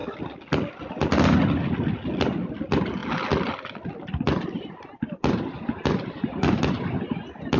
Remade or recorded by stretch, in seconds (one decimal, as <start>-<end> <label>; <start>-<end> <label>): 0.0-7.6 recorded